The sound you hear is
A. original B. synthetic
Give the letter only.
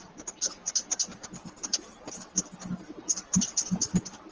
A